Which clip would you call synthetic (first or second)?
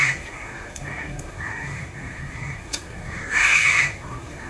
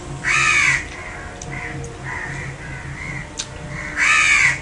first